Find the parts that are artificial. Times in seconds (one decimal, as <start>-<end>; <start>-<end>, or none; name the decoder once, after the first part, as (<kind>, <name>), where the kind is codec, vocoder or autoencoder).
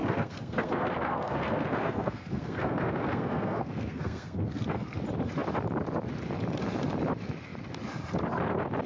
0.0-5.0 (codec, SNAC)